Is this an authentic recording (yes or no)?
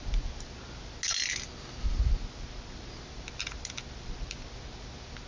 yes